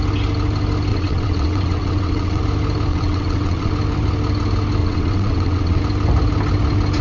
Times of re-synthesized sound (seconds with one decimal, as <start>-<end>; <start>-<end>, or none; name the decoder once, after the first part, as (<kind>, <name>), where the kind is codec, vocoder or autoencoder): 0.9-2.4 (vocoder, WaveNeXt); 2.9-3.7; 4.8-5.8